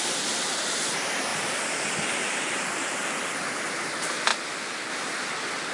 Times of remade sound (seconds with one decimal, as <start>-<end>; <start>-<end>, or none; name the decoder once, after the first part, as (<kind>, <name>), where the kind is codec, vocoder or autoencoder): 1.3-3.3 (vocoder, BigVGAN v2)